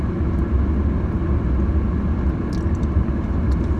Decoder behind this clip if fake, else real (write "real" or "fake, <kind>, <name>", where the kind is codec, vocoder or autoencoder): real